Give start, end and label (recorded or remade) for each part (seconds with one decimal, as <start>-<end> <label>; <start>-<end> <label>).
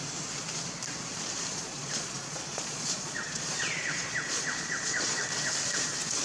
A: 0.0-1.5 recorded; 1.5-5.2 remade; 5.2-6.2 recorded